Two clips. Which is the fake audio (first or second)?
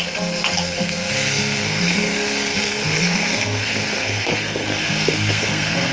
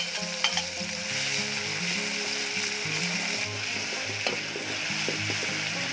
first